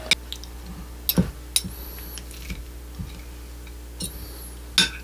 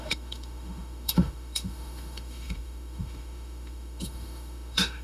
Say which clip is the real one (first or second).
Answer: first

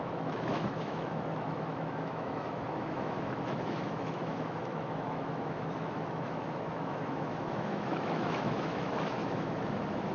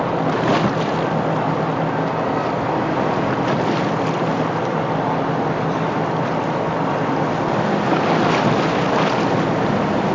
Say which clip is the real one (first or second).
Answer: second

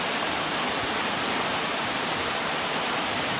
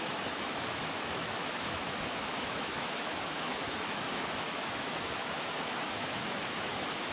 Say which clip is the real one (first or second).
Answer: first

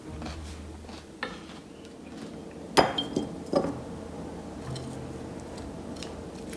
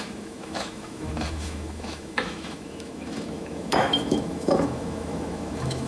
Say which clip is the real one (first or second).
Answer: first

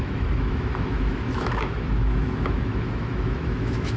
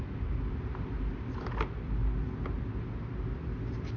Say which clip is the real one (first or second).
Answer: second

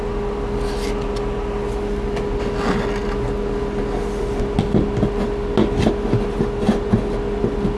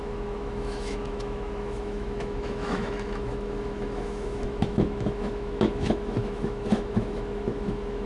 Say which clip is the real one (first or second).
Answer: first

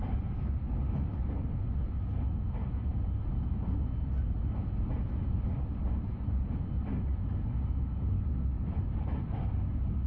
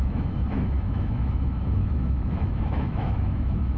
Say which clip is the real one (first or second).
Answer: first